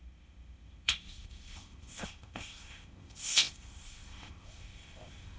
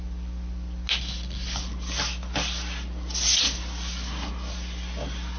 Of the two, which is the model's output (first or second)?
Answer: first